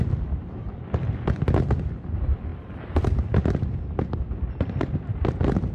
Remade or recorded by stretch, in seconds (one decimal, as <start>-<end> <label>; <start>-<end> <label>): 0.0-5.7 recorded